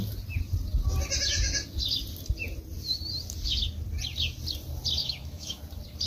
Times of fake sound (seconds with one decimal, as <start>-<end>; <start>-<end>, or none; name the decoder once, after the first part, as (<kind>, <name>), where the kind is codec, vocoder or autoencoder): 5.0-5.6 (autoencoder, DAC-VAE)